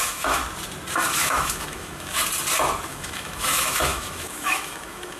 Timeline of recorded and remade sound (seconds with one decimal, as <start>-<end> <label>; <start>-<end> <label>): 0.0-0.4 remade; 0.4-1.2 recorded; 1.2-2.2 remade; 2.2-2.9 recorded; 2.9-5.2 remade